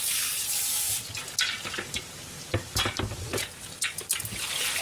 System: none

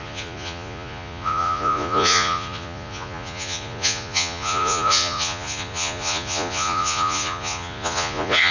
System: vocoder, Vocos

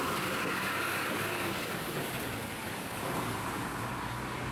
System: codec, DAC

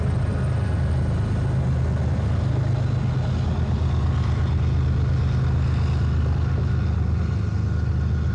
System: none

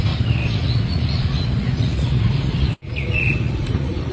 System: vocoder, Vocos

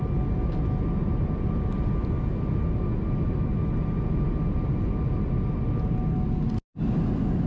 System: none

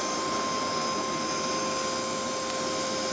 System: none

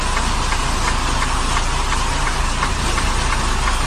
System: none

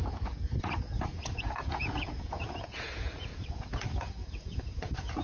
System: vocoder, Vocos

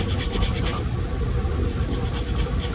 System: none